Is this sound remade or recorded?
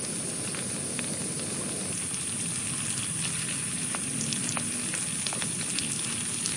recorded